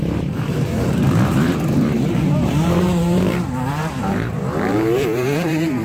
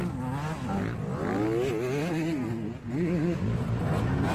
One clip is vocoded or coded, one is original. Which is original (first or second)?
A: second